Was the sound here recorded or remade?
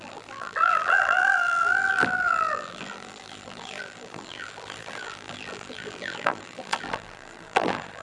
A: remade